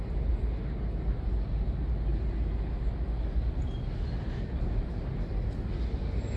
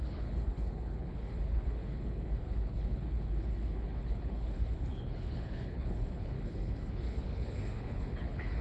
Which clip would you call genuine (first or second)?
first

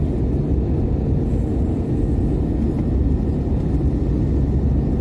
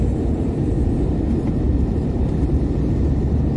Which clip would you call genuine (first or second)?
first